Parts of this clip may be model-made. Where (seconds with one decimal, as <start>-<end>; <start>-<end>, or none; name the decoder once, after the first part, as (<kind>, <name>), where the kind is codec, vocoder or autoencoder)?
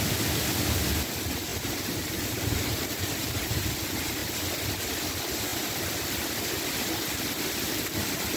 1.5-3.7 (vocoder, BigVGAN v2)